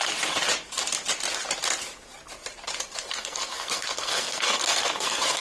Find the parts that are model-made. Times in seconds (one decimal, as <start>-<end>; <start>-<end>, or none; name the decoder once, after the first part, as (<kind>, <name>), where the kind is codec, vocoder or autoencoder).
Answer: 3.1-5.4 (codec, SNAC)